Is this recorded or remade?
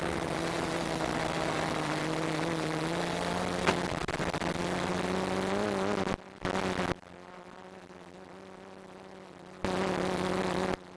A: recorded